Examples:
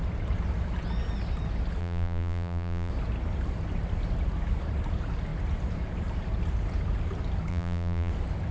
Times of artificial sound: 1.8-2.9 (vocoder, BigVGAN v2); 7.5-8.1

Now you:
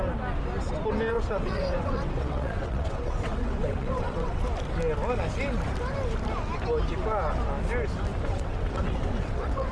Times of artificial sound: 1.1-4.4 (vocoder, WaveNeXt); 8.3-9.7